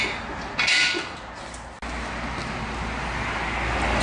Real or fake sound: real